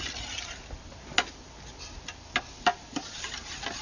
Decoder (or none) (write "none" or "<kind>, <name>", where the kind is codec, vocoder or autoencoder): none